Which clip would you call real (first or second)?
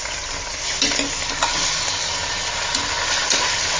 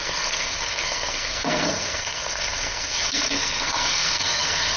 first